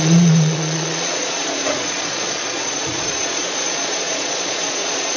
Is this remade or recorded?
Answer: remade